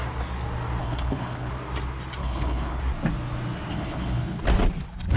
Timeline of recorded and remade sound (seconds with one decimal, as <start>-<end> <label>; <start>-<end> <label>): 0.0-0.8 recorded; 0.8-1.5 remade; 1.5-2.2 recorded; 2.2-2.8 remade; 2.8-3.7 recorded; 3.7-4.4 remade; 4.4-5.2 recorded